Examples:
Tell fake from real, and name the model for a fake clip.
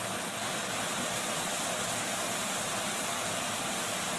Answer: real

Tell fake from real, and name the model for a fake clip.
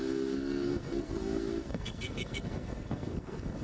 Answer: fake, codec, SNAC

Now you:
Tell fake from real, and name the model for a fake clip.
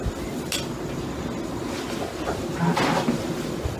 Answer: real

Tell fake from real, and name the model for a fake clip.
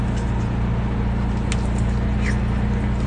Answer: real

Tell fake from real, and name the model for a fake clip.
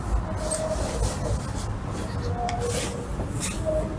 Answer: real